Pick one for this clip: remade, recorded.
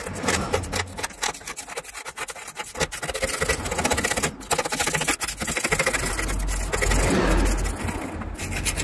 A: recorded